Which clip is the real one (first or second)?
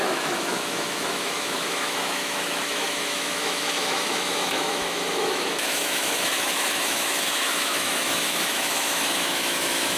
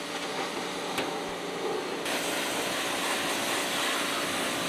second